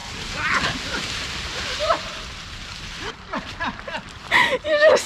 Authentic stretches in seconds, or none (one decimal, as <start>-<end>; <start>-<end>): 0.0-5.1